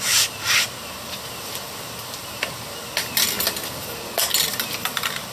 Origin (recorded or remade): recorded